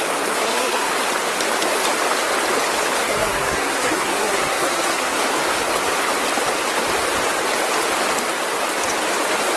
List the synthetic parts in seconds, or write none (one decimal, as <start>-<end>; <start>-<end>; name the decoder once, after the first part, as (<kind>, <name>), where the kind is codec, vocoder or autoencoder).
0.4-0.9 (codec, SNAC); 3.0-5.2